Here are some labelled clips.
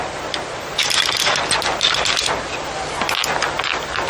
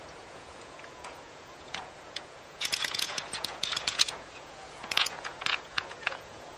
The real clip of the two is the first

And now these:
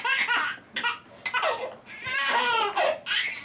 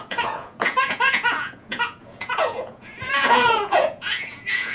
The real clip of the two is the first